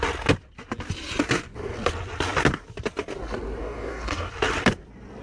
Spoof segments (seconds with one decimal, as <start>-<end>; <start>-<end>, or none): 3.6-4.3